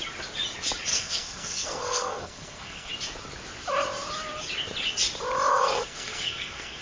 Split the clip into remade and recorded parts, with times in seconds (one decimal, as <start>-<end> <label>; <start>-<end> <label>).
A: 0.0-0.9 recorded; 0.9-2.9 remade; 2.9-5.5 recorded; 5.5-6.8 remade